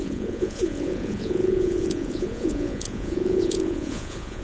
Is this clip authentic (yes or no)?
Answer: no